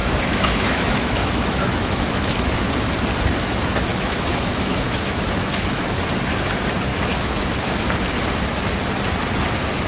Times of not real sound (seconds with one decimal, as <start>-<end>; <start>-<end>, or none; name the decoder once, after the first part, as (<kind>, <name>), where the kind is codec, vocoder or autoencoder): 0.0-2.7 (autoencoder, DAC-VAE); 3.9-6.0; 6.9-7.8